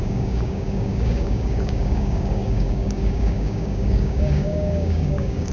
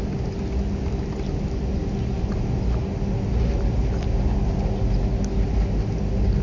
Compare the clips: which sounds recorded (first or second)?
second